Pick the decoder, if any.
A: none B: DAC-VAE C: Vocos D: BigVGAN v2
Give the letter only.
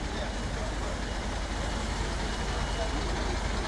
A